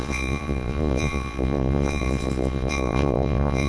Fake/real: fake